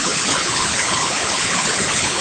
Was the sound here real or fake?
fake